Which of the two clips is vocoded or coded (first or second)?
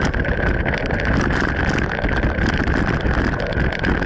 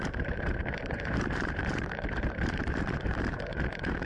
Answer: second